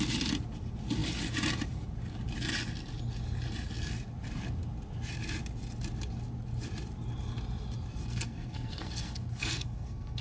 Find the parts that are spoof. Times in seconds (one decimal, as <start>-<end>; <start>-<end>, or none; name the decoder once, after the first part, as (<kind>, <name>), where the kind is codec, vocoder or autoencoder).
7.9-10.2 (codec, SNAC)